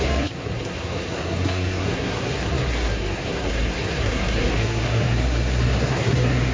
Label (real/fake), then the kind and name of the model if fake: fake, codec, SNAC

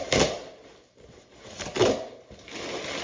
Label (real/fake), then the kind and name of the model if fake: real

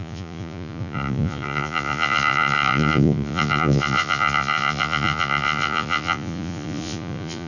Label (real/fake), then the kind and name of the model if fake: fake, vocoder, Vocos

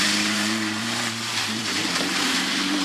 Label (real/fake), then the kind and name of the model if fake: fake, vocoder, BigVGAN v2